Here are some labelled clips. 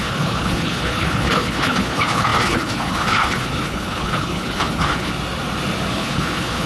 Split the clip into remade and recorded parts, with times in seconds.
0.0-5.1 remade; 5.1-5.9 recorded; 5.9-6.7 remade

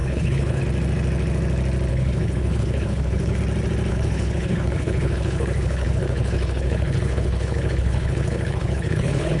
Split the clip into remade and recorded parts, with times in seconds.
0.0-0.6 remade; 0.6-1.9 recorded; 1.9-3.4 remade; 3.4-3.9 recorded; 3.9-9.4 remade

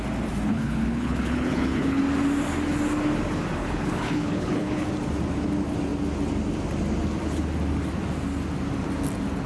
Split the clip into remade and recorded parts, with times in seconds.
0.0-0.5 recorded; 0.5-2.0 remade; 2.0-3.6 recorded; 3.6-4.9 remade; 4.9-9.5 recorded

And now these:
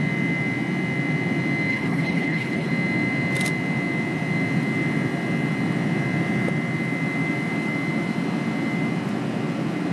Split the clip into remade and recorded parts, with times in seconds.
0.0-1.7 recorded; 1.7-2.7 remade; 2.7-9.9 recorded

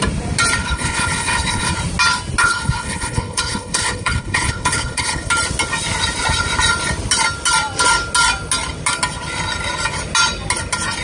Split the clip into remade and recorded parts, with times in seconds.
0.0-0.6 recorded; 0.6-1.7 remade; 1.7-2.4 recorded; 2.4-5.3 remade; 5.3-11.0 recorded

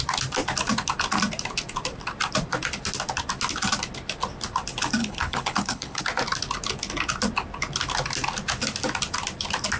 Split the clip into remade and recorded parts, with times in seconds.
0.0-5.0 recorded; 5.0-6.0 remade; 6.0-9.8 recorded